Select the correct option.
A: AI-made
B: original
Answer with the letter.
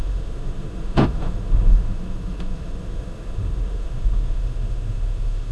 A